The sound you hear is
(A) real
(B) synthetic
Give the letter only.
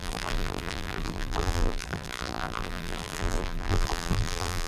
B